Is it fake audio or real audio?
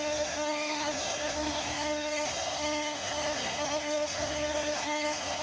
fake